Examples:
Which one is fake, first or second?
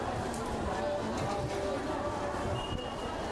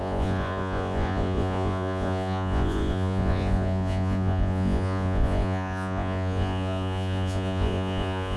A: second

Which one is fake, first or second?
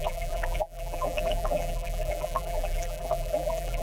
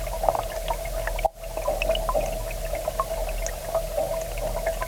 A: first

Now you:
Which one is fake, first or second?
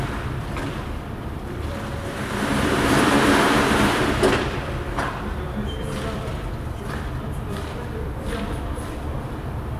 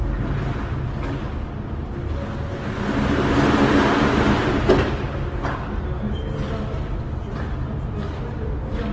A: first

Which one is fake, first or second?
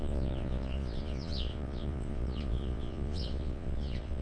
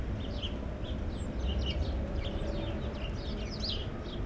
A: first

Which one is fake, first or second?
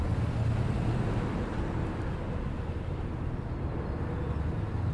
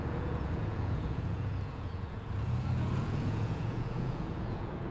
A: second